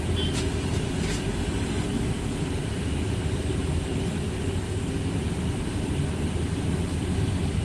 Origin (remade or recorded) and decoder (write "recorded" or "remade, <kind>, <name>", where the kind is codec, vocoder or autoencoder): recorded